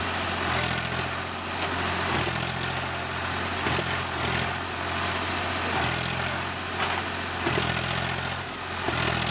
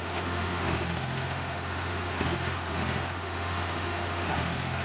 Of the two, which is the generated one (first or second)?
second